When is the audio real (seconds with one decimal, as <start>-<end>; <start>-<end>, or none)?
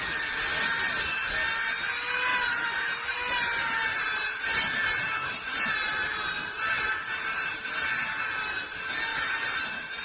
0.0-2.3; 7.6-9.1